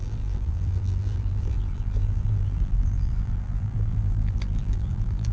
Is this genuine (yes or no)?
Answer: no